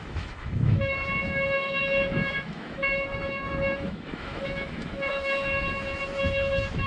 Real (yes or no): no